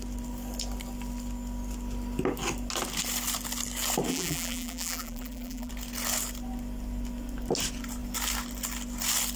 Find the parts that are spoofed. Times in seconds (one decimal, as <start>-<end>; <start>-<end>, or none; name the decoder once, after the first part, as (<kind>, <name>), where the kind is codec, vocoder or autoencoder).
4.1-5.7 (vocoder, BigVGAN v2)